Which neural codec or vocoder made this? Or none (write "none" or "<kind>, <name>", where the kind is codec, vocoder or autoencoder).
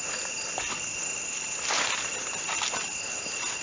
none